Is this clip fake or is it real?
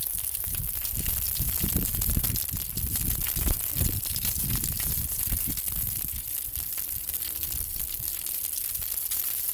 real